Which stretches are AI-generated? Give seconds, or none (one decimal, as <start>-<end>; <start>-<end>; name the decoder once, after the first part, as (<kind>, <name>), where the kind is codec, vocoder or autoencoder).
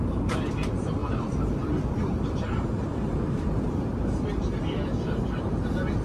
1.0-3.6 (vocoder, BigVGAN v2)